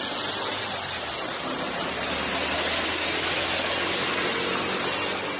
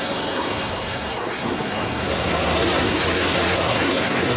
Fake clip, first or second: second